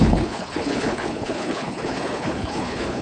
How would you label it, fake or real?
fake